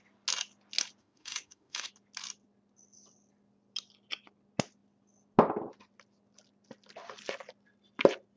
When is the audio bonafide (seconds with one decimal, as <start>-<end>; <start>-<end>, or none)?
0.0-1.0; 1.9-8.4